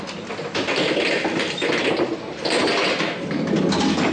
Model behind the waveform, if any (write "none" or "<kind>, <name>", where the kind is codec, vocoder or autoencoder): none